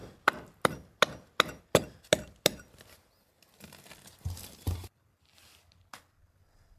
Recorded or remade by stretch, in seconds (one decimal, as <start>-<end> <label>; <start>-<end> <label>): 0.0-6.8 recorded

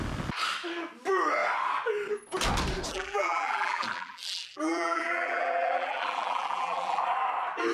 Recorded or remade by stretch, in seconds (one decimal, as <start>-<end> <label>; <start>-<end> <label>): 0.0-2.9 recorded; 2.9-7.0 remade; 7.0-7.7 recorded

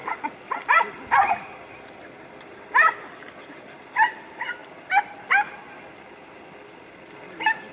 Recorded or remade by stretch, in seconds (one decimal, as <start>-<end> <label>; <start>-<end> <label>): 0.0-4.6 recorded; 4.6-5.1 remade; 5.1-7.7 recorded

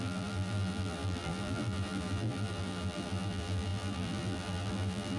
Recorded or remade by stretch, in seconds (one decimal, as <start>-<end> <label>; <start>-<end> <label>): 0.0-5.2 remade

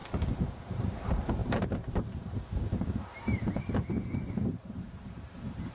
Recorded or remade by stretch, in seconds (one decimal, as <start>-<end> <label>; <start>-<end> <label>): 0.0-0.6 recorded; 0.6-5.7 remade

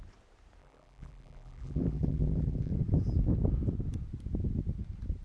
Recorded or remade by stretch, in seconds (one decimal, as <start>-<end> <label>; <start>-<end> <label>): 0.0-0.6 recorded; 0.6-2.7 remade; 2.7-5.2 recorded